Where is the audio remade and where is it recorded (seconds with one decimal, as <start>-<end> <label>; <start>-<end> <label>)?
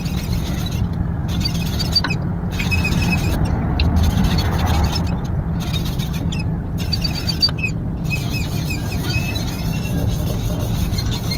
0.0-11.4 recorded